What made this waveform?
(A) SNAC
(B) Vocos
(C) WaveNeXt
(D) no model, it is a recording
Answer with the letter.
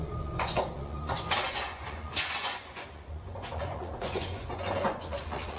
B